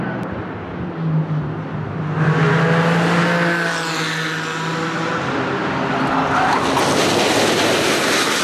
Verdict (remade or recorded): recorded